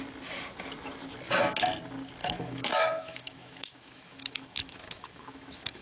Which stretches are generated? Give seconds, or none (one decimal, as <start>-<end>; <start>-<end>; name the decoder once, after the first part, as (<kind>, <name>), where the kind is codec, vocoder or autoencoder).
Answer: 2.2-5.8 (autoencoder, DAC-VAE)